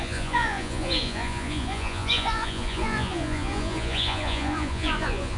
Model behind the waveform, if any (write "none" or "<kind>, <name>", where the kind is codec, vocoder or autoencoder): vocoder, Vocos